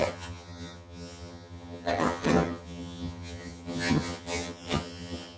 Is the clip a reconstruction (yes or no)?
yes